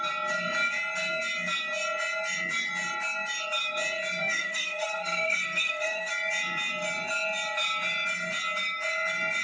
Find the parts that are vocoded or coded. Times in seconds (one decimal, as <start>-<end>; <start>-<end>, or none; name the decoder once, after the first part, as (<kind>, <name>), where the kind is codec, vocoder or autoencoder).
4.2-6.1 (codec, SNAC)